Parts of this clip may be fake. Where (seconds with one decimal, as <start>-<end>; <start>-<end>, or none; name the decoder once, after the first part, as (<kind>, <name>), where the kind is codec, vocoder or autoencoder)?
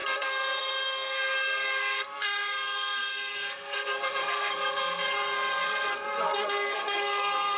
0.0-7.6 (codec, SNAC)